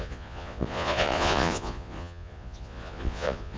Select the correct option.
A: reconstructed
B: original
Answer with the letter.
A